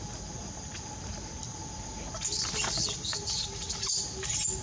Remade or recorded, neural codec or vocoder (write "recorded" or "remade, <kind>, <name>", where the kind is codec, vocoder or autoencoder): recorded